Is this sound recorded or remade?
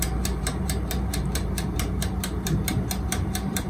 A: remade